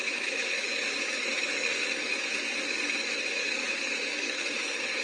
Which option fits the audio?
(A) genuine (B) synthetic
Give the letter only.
B